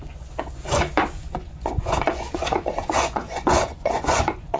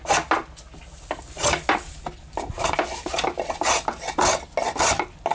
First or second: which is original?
second